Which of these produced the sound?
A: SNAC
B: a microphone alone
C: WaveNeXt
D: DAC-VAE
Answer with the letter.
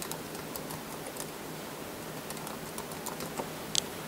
B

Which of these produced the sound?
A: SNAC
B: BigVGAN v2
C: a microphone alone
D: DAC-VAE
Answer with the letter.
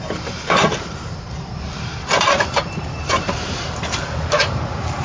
B